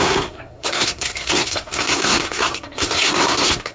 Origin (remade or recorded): remade